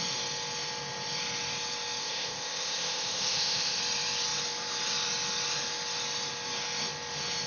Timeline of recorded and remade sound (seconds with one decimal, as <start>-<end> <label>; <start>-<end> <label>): 0.0-2.0 recorded; 2.0-3.8 remade; 3.8-7.5 recorded